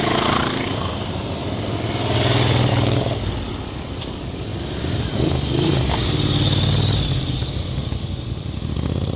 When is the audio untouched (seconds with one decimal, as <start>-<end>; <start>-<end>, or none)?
0.0-2.7; 3.9-9.2